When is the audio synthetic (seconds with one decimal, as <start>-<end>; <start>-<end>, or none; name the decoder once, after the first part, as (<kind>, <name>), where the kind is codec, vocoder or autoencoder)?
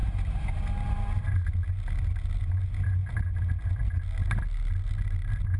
0.0-1.6 (vocoder, BigVGAN v2)